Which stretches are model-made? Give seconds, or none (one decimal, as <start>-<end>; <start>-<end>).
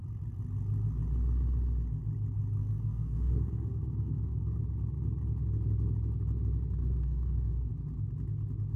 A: 2.6-4.6; 6.8-7.7